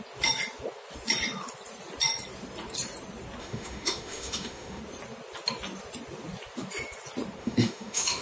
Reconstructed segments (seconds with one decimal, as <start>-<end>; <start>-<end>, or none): 3.4-4.8; 7.4-8.2